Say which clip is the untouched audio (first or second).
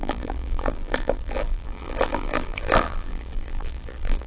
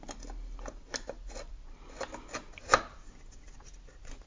second